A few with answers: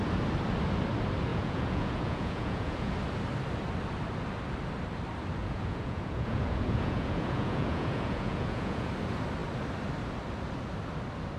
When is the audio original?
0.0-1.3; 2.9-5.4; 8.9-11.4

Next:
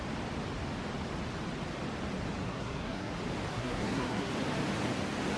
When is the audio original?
0.0-2.4; 3.1-3.5; 4.3-5.4

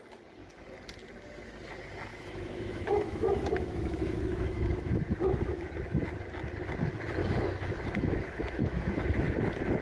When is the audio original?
0.0-2.1; 5.6-7.2; 9.0-9.8

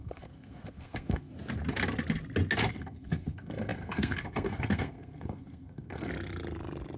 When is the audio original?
1.3-2.7; 6.1-7.0

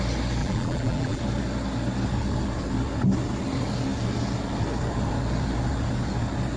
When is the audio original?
0.0-0.4; 1.2-6.6